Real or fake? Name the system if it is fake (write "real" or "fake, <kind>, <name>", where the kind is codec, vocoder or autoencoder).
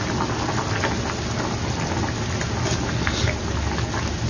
real